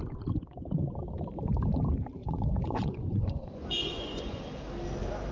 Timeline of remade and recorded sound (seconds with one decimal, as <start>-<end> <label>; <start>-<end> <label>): 0.0-2.2 recorded; 2.2-4.4 remade; 4.4-5.3 recorded